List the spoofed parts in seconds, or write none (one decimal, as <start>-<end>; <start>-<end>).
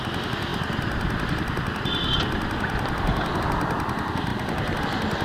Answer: none